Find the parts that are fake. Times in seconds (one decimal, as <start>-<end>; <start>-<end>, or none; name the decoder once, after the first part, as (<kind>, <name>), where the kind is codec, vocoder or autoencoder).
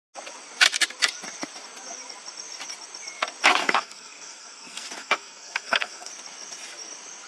3.6-6.1 (codec, SNAC)